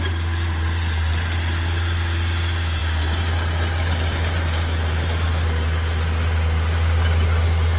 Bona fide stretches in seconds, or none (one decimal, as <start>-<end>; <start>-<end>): 0.0-7.8